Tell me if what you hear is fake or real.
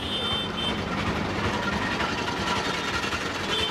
real